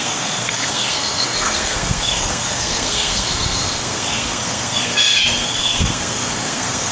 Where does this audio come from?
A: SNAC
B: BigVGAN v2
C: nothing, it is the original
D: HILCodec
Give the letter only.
A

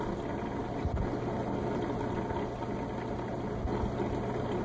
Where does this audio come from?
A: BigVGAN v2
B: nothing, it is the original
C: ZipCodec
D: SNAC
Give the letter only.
B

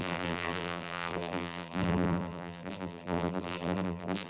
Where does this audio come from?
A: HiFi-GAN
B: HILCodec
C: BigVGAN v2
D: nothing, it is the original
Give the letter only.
C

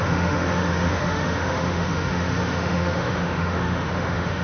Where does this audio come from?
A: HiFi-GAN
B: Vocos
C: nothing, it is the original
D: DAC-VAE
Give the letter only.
D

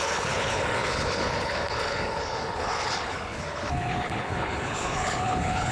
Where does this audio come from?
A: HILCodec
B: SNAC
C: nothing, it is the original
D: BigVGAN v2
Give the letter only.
A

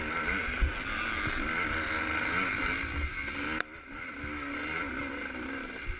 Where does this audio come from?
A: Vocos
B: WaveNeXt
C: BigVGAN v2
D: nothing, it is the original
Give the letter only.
D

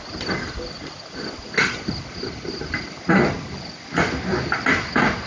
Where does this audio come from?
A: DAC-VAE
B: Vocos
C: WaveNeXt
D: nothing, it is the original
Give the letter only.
D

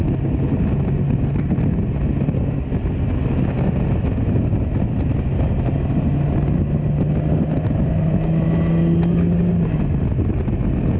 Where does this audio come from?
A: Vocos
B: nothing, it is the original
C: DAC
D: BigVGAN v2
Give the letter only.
B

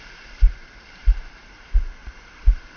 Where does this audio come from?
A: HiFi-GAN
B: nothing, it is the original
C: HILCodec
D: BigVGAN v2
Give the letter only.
D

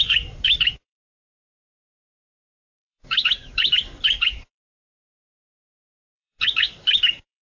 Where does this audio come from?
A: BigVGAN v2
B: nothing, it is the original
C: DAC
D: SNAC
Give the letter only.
C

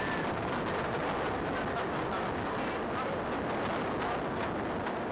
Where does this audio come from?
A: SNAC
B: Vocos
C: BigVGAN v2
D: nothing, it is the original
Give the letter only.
D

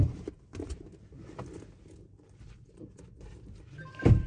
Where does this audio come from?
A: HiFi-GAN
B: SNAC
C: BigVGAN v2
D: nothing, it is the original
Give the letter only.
C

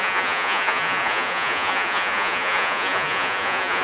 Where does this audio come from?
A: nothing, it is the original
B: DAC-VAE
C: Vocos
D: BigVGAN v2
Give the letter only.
C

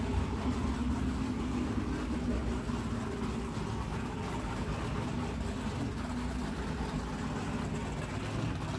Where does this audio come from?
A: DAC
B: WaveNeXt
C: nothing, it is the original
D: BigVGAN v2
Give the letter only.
C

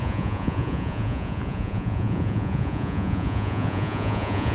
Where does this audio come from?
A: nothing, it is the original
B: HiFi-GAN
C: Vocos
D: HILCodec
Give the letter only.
C